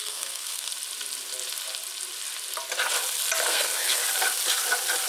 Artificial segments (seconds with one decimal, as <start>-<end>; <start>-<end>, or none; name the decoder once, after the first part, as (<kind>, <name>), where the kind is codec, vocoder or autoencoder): 0.0-0.7 (codec, SNAC); 3.5-4.0